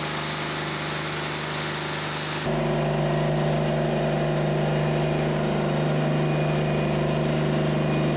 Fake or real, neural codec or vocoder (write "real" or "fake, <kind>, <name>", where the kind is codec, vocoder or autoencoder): real